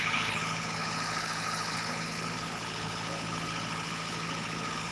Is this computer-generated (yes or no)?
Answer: yes